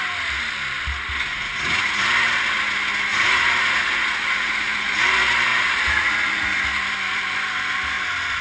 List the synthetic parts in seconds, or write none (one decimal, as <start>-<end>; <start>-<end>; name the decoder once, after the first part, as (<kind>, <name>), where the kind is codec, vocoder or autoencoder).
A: 1.3-2.0 (vocoder, Vocos); 3.1-5.0; 5.5-6.6

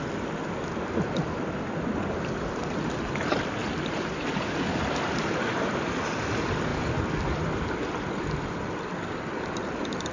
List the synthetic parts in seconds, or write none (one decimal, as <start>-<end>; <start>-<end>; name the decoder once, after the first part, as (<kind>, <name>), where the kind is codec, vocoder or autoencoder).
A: none

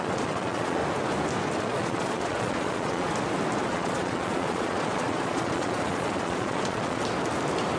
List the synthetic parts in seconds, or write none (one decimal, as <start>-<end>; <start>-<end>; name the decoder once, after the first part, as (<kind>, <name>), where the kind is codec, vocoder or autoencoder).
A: 0.0-0.8 (vocoder, Vocos); 1.6-3.1; 3.7-7.0

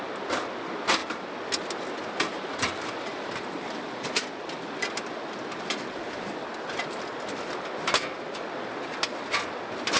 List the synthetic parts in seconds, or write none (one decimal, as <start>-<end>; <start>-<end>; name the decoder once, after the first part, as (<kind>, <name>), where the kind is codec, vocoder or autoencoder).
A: none

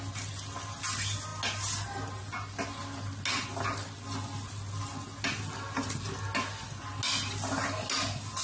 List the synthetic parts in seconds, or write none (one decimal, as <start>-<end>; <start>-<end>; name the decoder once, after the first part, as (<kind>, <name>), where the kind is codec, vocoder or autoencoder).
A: none

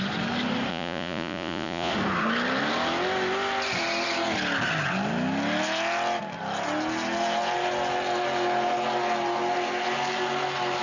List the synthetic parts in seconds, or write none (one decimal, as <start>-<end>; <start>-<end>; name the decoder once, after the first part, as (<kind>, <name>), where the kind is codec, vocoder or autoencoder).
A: 0.7-1.9 (vocoder, Vocos)

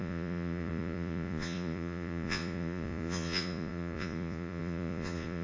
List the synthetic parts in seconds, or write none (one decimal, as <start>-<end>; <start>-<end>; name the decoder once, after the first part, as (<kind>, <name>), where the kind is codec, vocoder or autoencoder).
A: 0.0-5.4 (vocoder, Vocos)